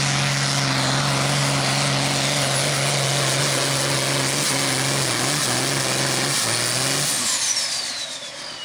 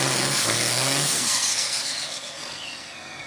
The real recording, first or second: first